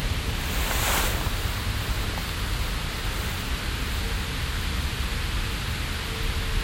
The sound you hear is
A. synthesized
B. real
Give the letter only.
B